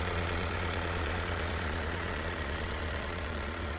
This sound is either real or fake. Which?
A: fake